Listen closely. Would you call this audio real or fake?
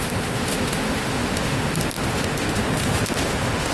fake